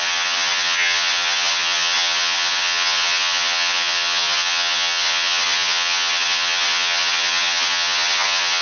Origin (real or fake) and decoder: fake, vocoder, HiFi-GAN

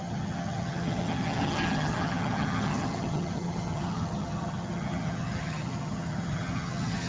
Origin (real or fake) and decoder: fake, vocoder, HiFi-GAN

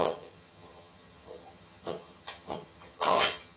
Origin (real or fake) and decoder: fake, vocoder, HiFi-GAN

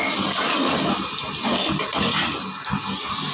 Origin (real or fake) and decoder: real